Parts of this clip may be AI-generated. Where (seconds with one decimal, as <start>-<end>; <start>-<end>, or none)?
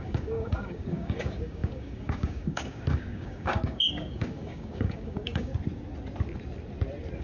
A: 0.0-5.5